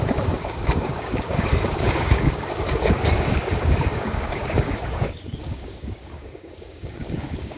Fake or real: fake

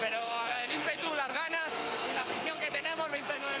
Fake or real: fake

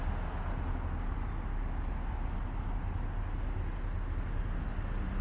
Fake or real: real